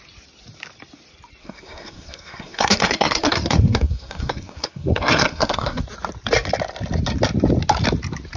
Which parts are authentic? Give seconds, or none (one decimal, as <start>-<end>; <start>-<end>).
0.0-1.4; 5.8-8.4